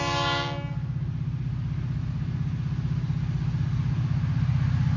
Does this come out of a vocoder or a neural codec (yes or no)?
no